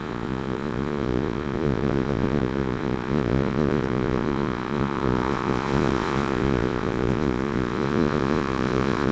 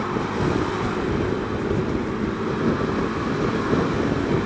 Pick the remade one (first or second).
first